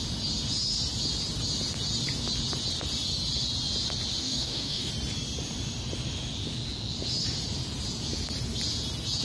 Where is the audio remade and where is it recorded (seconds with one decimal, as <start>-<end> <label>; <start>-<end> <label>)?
0.0-4.2 recorded; 4.2-4.9 remade; 4.9-9.2 recorded